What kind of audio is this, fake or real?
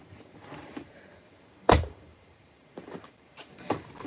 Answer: fake